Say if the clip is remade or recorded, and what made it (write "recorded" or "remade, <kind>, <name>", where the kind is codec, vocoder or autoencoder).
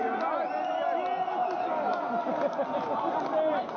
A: recorded